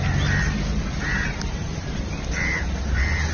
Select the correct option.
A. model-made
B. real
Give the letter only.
B